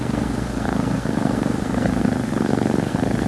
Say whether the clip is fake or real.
fake